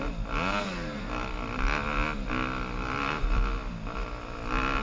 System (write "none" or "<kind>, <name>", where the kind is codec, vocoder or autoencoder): none